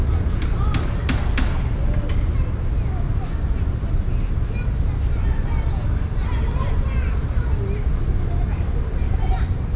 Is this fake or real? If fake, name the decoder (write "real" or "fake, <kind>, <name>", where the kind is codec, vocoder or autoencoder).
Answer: real